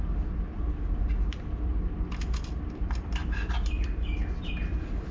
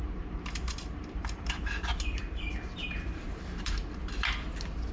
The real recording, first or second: first